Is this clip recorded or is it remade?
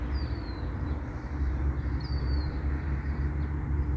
remade